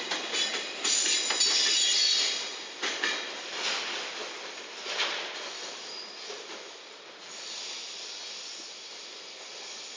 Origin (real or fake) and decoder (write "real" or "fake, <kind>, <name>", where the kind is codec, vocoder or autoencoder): real